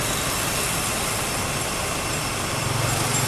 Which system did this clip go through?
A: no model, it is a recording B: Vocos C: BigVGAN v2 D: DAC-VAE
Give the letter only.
A